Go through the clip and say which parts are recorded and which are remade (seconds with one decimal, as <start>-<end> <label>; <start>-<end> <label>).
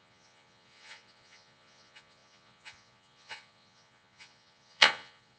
0.0-5.4 remade